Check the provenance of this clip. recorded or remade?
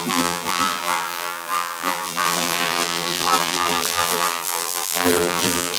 remade